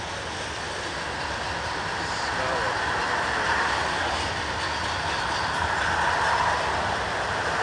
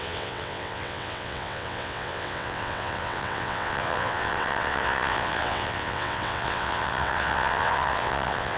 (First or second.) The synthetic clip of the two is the second